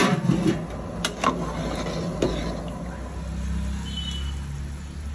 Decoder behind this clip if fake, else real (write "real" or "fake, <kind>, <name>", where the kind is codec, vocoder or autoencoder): real